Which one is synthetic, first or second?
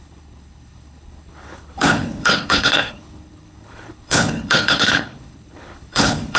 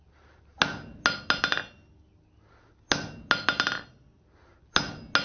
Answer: first